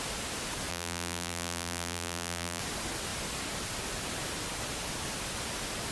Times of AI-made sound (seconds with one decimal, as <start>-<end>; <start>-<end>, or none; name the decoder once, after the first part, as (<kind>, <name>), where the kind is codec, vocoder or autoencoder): 0.7-2.6 (vocoder, BigVGAN v2)